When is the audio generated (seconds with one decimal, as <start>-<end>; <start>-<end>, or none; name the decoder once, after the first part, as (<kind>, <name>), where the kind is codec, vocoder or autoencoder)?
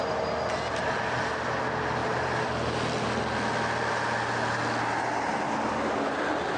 none